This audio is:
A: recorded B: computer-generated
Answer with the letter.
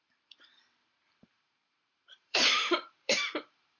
B